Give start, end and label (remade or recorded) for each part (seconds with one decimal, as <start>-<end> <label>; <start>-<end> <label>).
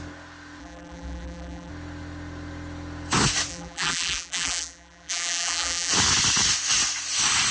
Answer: 0.0-0.6 recorded; 0.6-1.7 remade; 1.7-3.5 recorded; 3.5-5.9 remade; 5.9-7.5 recorded